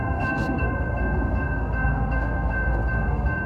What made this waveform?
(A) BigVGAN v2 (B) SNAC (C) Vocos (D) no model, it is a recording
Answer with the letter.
B